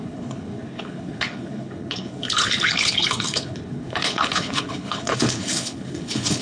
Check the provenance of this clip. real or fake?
fake